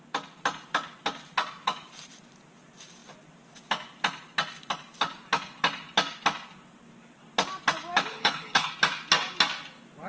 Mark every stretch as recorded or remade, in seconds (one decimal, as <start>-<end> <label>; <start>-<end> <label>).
0.0-8.1 recorded; 8.1-8.7 remade; 8.7-10.1 recorded

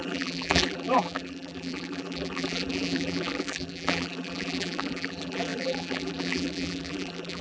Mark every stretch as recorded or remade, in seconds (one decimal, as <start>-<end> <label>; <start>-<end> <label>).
0.0-7.4 remade

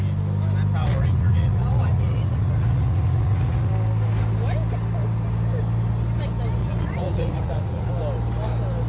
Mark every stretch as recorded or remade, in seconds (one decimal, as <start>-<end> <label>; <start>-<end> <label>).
0.0-0.8 recorded; 0.8-3.7 remade; 3.7-6.6 recorded; 6.6-7.9 remade; 7.9-8.9 recorded

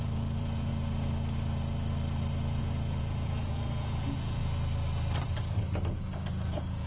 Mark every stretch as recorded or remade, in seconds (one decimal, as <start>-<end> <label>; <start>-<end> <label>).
0.0-0.7 remade; 0.7-2.6 recorded; 2.6-4.4 remade; 4.4-6.3 recorded; 6.3-6.9 remade

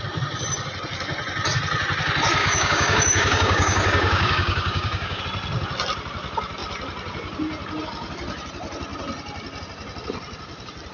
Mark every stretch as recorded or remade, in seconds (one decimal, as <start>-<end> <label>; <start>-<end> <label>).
0.0-2.4 recorded; 2.4-5.2 remade; 5.2-10.9 recorded

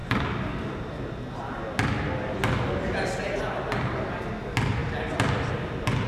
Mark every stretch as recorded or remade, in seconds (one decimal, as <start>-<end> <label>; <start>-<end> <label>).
0.0-6.1 recorded